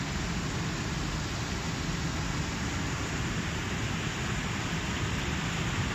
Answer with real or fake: real